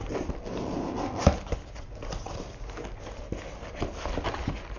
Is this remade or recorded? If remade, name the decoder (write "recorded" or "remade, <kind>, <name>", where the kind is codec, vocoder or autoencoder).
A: recorded